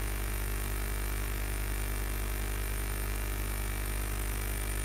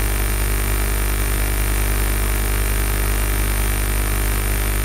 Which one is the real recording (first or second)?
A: second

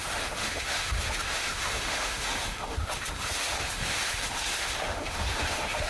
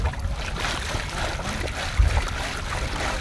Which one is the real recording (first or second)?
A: second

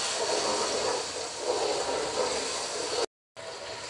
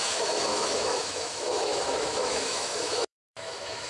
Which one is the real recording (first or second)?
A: first